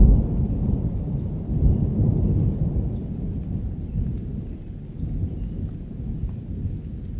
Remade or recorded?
recorded